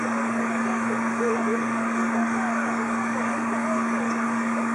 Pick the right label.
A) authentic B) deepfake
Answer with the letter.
B